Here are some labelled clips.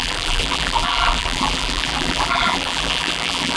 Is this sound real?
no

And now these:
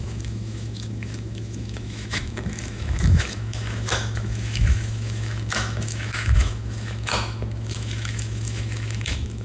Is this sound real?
no